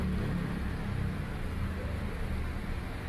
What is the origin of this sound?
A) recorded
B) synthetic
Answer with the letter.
A